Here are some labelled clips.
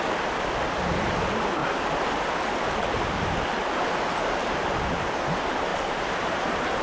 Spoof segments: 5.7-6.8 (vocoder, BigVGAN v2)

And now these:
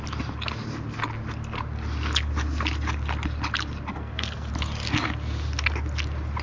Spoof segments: 3.9-4.5 (codec, SNAC)

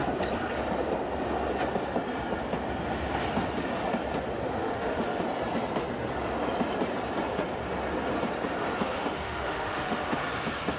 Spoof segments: 4.6-5.2 (autoencoder, DAC-VAE); 8.9-10.2

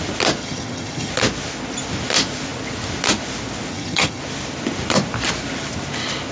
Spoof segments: 0.4-1.1 (vocoder, HiFi-GAN); 3.7-4.2